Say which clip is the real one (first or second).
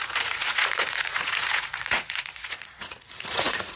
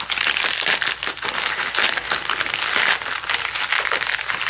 second